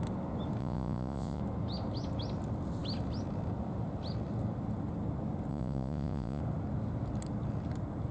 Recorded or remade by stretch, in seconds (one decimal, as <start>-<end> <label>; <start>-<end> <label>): 0.0-0.6 recorded; 0.6-1.4 remade; 1.4-5.5 recorded; 5.5-6.4 remade; 6.4-8.1 recorded

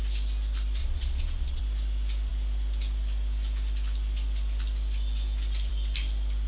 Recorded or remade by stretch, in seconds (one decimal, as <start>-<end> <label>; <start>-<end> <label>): 0.0-0.8 recorded; 0.8-1.6 remade; 1.6-6.5 recorded

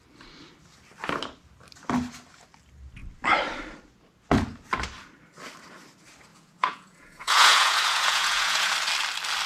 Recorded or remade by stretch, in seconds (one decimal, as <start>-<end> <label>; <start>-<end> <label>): 0.0-6.3 recorded; 6.3-8.7 remade; 8.7-9.5 recorded

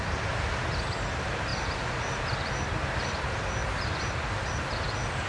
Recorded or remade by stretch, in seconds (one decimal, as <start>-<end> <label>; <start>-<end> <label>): 0.0-5.3 recorded